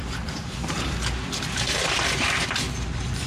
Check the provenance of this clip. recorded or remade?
remade